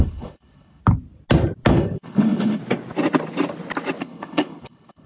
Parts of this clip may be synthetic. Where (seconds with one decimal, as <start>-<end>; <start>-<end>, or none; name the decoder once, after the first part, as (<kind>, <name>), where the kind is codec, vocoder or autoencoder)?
0.0-0.8 (codec, HILCodec); 1.7-2.6; 4.0-5.1